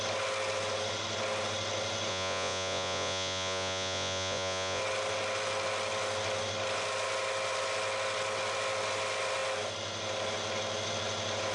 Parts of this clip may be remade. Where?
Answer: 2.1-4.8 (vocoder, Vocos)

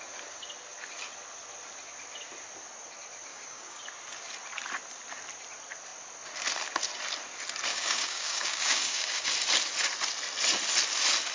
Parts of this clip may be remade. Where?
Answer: 3.3-3.8 (codec, DAC); 7.7-9.3